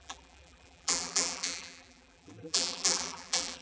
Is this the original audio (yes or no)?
no